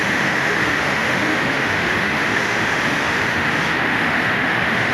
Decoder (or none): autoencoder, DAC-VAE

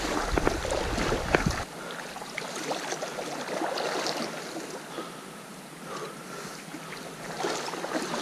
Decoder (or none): none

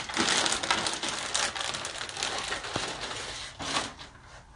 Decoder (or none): none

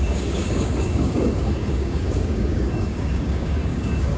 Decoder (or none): codec, DAC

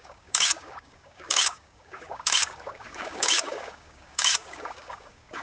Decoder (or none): codec, DAC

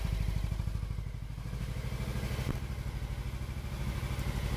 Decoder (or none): none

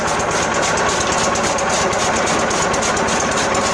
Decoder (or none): none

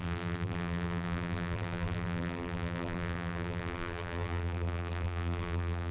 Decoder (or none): vocoder, BigVGAN v2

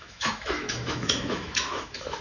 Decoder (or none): autoencoder, DAC-VAE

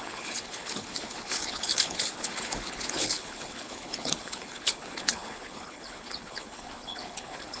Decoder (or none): codec, HILCodec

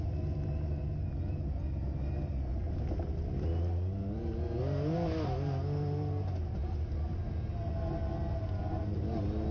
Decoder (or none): none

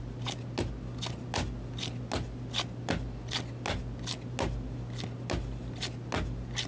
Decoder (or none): none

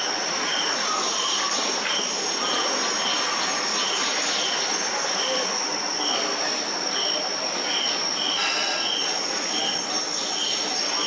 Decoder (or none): none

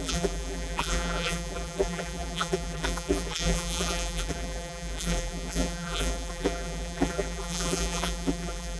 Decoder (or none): vocoder, BigVGAN v2